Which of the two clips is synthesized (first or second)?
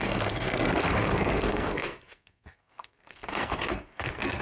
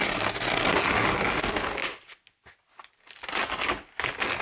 first